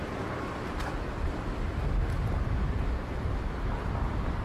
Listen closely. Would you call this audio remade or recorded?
remade